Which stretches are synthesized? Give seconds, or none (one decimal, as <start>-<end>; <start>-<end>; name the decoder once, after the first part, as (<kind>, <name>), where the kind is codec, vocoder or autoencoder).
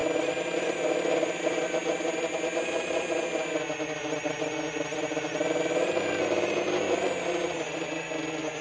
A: none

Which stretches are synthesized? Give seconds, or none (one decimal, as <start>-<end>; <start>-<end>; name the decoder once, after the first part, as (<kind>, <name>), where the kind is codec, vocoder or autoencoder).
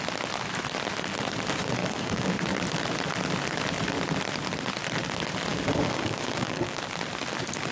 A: 1.8-2.4 (codec, DAC); 5.5-6.8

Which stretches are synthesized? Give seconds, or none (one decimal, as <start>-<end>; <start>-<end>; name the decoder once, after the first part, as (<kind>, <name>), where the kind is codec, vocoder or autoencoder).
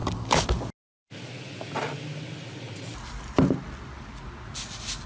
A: none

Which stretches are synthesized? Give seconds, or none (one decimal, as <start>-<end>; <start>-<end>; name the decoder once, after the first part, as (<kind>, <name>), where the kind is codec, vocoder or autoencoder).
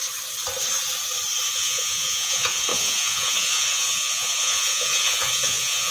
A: 1.5-5.9 (vocoder, Vocos)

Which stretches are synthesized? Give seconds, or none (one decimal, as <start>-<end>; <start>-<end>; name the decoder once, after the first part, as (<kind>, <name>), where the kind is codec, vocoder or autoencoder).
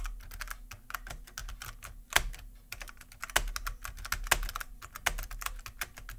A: 1.4-3.0 (vocoder, BigVGAN v2)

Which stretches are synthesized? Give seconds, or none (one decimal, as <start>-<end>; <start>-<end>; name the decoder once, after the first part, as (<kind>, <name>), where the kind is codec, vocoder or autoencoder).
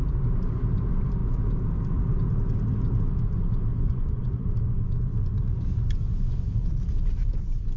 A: 3.7-4.4 (vocoder, Vocos); 6.0-6.7